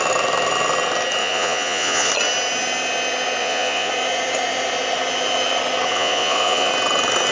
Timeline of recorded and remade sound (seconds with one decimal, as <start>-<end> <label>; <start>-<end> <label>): 0.0-1.2 recorded; 1.2-2.1 remade; 2.1-3.4 recorded; 3.4-3.9 remade; 3.9-5.9 recorded; 5.9-6.7 remade; 6.7-7.3 recorded

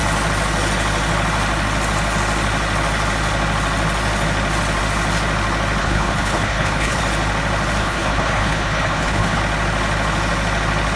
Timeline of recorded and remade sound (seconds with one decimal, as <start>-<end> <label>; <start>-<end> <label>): 0.0-5.8 recorded; 5.8-7.0 remade; 7.0-7.8 recorded; 7.8-9.4 remade; 9.4-11.0 recorded